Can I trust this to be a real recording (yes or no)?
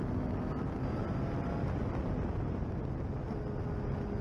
yes